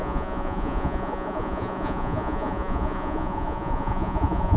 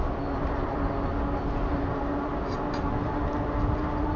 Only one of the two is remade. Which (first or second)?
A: first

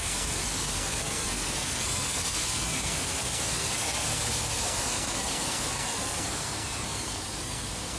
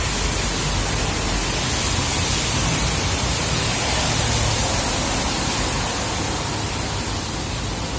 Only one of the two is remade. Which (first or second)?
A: first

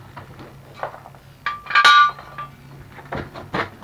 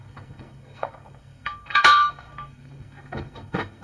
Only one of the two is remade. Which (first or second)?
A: second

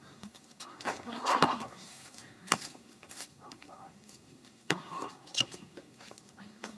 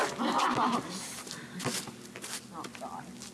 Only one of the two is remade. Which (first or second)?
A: first